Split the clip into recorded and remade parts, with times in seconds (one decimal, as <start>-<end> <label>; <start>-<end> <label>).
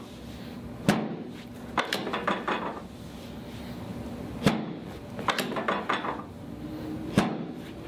0.0-7.9 recorded